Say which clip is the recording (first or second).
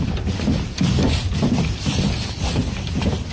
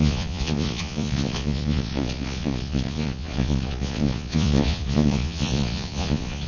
first